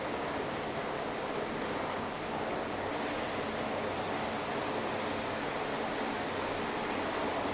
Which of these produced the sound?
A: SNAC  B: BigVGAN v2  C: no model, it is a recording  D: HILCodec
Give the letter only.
C